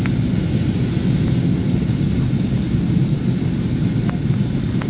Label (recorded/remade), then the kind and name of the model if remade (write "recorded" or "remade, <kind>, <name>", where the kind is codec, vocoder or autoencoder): recorded